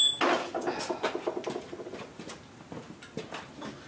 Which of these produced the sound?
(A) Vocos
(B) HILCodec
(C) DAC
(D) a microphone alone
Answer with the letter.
D